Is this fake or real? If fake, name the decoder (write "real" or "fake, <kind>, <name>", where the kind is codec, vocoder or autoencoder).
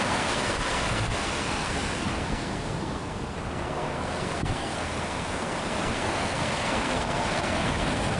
fake, codec, SNAC